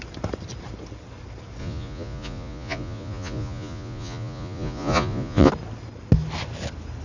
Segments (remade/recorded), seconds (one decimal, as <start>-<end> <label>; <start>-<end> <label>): 0.0-1.6 recorded; 1.6-5.5 remade; 5.5-7.0 recorded